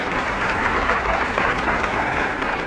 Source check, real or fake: fake